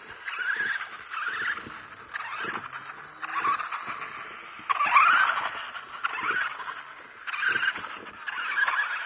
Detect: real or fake real